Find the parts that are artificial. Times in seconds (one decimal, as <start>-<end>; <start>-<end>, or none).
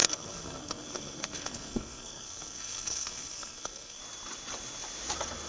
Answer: 0.0-4.0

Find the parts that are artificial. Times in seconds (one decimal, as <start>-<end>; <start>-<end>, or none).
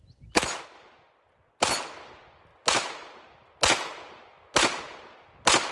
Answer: none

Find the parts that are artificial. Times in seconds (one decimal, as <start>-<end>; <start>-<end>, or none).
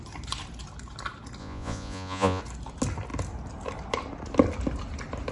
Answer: 1.4-2.4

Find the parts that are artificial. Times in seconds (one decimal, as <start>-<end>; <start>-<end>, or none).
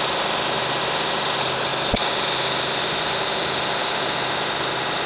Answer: none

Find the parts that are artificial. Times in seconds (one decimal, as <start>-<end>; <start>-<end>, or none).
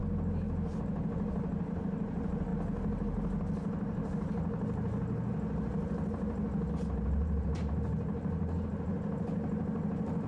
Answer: 0.8-2.5; 6.7-10.3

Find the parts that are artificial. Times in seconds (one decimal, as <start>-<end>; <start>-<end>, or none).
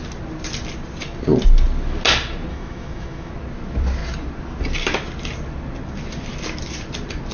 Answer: 2.5-3.3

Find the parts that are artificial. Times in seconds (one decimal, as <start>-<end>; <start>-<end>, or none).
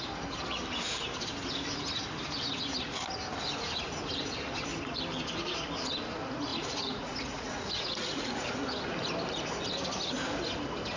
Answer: 6.5-8.5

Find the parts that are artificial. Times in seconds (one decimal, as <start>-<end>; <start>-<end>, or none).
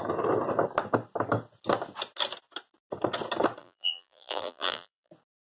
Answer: 3.6-5.1